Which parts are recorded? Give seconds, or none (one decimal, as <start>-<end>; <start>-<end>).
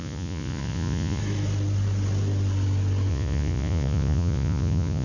1.2-3.1